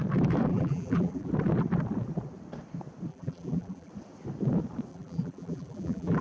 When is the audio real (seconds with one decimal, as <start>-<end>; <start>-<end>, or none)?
0.0-0.5; 1.3-3.1; 3.9-4.9